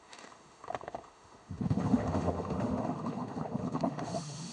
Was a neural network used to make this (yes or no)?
yes